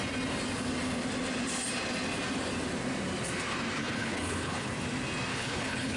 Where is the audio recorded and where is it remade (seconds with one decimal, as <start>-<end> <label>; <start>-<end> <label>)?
0.0-3.8 recorded; 3.8-4.7 remade; 4.7-5.3 recorded; 5.3-6.0 remade